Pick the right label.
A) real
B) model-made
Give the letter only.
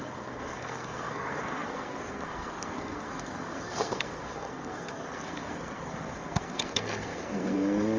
B